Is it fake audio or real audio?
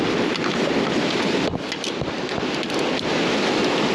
real